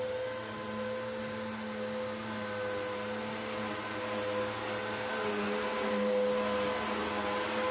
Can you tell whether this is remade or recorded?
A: recorded